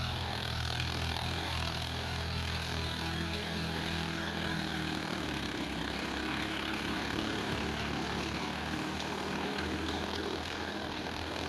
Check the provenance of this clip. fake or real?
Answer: fake